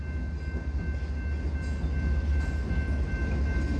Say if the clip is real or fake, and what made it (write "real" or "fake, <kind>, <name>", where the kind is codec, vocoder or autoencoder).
real